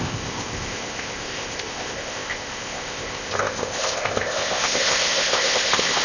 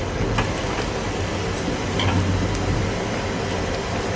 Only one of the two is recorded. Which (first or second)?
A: second